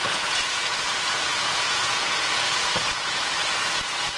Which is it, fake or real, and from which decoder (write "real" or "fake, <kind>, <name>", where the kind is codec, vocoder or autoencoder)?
fake, vocoder, Vocos